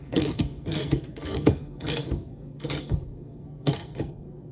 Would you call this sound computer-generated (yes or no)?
yes